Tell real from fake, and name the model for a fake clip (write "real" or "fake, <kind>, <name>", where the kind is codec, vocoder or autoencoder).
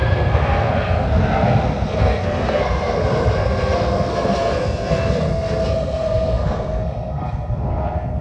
fake, codec, SNAC